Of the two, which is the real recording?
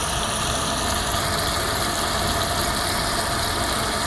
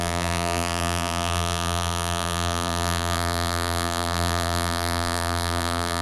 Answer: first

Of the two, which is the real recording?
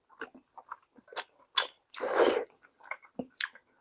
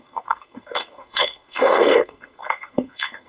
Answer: first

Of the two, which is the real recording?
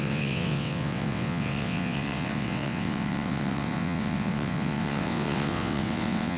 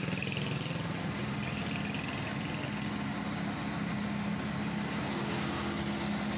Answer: second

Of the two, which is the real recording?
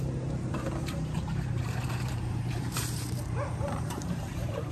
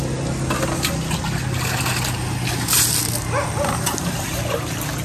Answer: second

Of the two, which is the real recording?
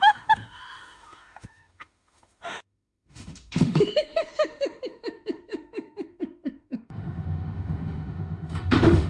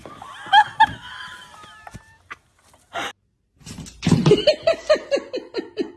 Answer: second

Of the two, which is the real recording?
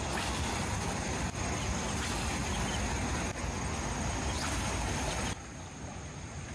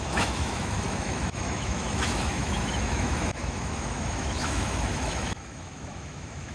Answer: first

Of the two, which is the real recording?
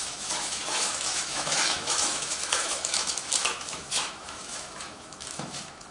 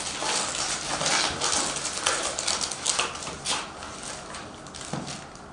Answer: second